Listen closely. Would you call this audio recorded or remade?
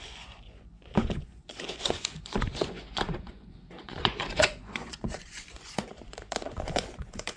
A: remade